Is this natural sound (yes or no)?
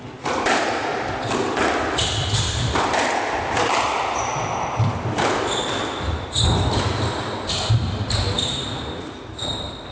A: no